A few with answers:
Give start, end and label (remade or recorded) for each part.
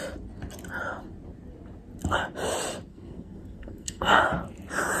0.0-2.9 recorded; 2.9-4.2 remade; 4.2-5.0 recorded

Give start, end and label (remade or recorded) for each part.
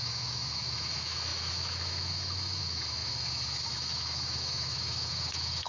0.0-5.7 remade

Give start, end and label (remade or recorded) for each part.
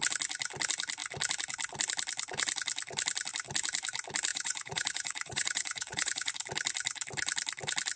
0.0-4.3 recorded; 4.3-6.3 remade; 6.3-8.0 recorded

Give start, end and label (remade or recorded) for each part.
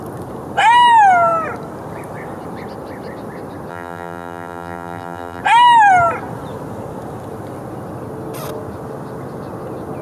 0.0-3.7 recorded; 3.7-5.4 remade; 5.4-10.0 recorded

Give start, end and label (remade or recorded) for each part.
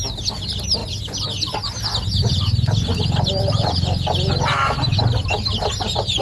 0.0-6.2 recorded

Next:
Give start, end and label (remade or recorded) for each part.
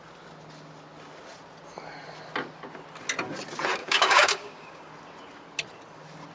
0.0-3.8 recorded; 3.8-4.9 remade; 4.9-6.3 recorded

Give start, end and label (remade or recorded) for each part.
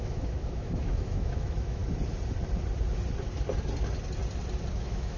0.0-1.8 remade; 1.8-4.7 recorded; 4.7-5.2 remade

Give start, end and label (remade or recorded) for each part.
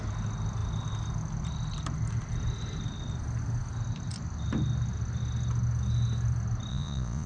0.0-6.7 recorded; 6.7-7.3 remade